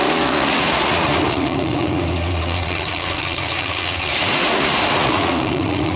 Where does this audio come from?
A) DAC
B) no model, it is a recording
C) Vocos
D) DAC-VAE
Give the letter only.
C